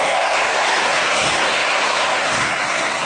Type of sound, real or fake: fake